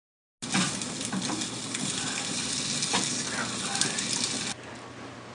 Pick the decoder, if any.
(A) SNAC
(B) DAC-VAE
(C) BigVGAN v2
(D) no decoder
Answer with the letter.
D